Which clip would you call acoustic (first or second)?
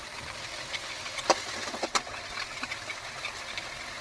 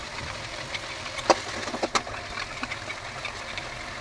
second